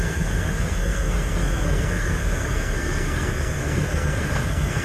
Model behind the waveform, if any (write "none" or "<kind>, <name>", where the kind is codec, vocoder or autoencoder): codec, SNAC